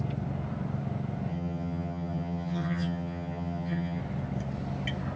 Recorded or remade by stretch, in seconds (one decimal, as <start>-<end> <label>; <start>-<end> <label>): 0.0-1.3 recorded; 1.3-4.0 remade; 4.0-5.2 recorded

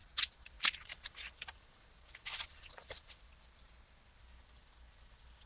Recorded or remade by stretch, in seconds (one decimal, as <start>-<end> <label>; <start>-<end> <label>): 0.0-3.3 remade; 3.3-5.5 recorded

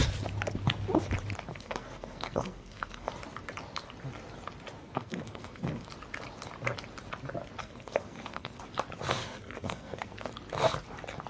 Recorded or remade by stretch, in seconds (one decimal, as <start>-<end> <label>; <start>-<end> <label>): 0.0-1.5 recorded; 1.5-3.1 remade; 3.1-4.8 recorded; 4.8-5.9 remade; 5.9-7.6 recorded; 7.6-8.6 remade; 8.6-9.2 recorded; 9.2-10.3 remade; 10.3-11.3 recorded

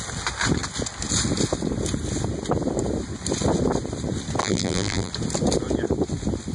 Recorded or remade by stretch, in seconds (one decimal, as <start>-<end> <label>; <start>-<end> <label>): 0.0-4.4 recorded; 4.4-5.1 remade; 5.1-6.5 recorded

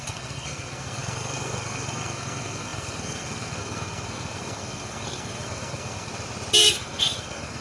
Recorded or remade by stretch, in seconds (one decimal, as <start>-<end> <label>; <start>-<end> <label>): 0.0-6.1 remade; 6.1-6.6 recorded; 6.6-7.6 remade

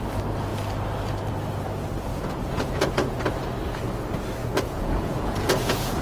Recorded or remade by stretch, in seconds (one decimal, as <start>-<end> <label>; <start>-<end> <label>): 0.0-2.1 recorded; 2.1-3.2 remade; 3.2-4.4 recorded; 4.4-6.0 remade

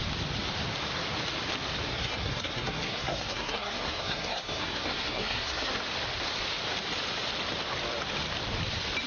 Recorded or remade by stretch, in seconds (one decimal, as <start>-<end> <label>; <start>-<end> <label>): 0.0-1.9 recorded; 1.9-5.7 remade; 5.7-9.1 recorded

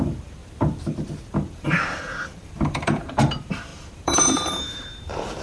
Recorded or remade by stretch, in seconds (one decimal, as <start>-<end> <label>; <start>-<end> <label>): 0.0-0.4 remade; 0.4-1.3 recorded; 1.3-5.4 remade